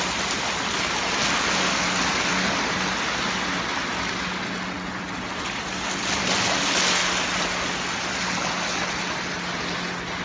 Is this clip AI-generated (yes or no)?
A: no